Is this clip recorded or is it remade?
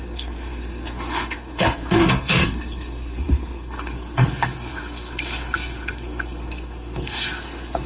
remade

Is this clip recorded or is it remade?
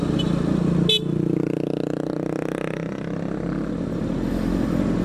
recorded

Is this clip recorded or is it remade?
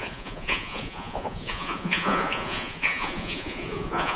remade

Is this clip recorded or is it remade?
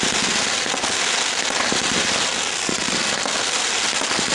recorded